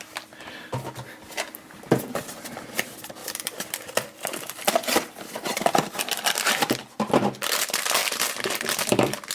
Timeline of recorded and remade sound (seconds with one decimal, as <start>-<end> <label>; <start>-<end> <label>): 0.0-3.2 recorded; 3.2-6.5 remade; 6.5-8.0 recorded; 8.0-9.3 remade